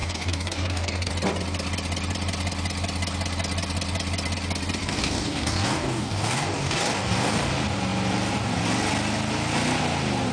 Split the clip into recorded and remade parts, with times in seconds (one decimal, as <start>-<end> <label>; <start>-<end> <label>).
0.0-1.1 remade; 1.1-4.8 recorded; 4.8-7.5 remade; 7.5-10.3 recorded